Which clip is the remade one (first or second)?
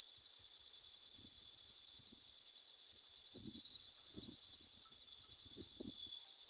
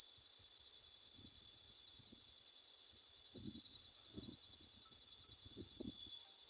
first